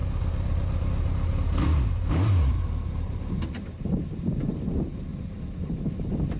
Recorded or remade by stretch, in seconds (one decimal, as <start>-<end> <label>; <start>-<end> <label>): 0.0-2.1 recorded; 2.1-2.5 remade; 2.5-3.5 recorded; 3.5-5.1 remade; 5.1-5.6 recorded; 5.6-6.4 remade